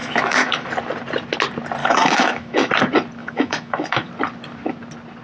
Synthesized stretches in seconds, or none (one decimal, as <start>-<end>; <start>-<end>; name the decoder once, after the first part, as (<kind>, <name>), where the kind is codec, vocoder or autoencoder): 0.0-0.7 (autoencoder, DAC-VAE); 1.8-2.7; 3.2-4.1